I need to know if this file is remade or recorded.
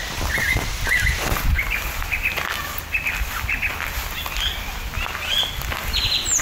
recorded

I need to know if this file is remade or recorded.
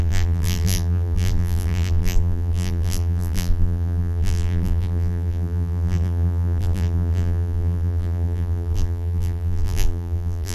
remade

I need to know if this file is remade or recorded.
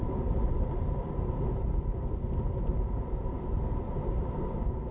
recorded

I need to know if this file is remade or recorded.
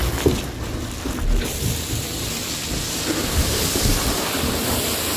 remade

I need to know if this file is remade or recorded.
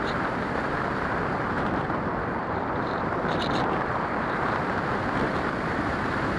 remade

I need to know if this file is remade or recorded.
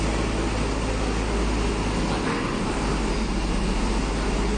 recorded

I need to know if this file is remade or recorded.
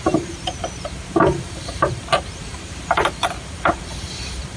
remade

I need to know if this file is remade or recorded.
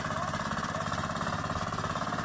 recorded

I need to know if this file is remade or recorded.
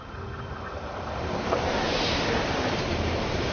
remade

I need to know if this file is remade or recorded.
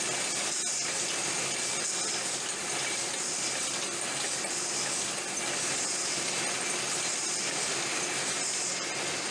recorded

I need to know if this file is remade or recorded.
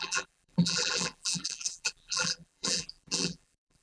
remade